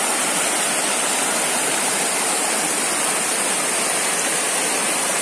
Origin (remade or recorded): recorded